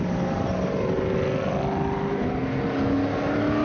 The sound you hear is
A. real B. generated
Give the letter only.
A